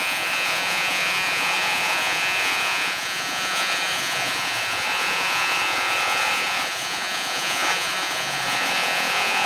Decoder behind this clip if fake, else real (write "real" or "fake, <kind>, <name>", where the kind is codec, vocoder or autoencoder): fake, vocoder, Vocos